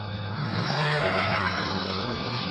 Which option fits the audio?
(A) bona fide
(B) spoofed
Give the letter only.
B